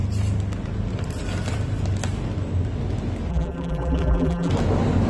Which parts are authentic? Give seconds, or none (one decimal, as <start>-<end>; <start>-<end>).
0.0-3.3; 4.5-5.1

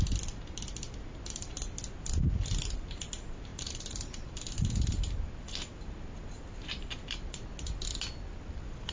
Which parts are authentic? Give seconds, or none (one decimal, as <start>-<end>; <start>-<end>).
0.0-3.5; 4.5-8.9

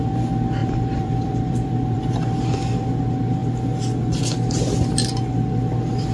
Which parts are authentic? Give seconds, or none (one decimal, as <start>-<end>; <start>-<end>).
0.0-0.6; 2.0-6.1